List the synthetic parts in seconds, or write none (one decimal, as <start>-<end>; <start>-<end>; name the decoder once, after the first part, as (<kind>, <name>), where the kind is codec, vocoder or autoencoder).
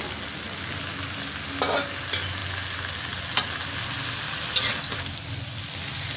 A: none